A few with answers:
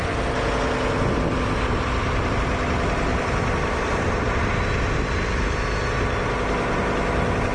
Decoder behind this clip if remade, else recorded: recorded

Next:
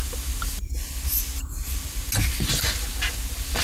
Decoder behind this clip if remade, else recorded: recorded